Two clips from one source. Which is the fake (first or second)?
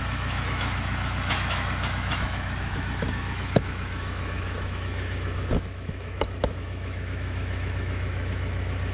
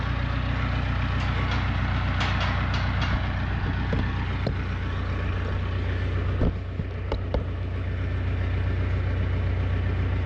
first